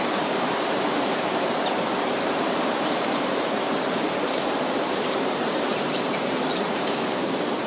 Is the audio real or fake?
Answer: fake